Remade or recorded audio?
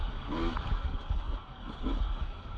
remade